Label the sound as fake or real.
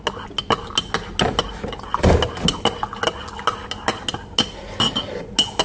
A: real